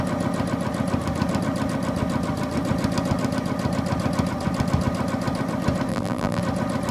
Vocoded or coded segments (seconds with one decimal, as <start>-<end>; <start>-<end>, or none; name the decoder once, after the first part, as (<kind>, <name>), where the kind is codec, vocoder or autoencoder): 5.9-6.4 (vocoder, BigVGAN v2)